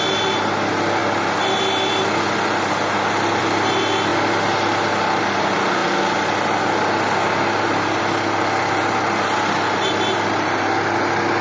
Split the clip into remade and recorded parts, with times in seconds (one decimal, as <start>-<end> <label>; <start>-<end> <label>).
0.0-11.4 recorded